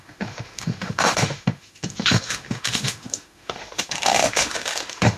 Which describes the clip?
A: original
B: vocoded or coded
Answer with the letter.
B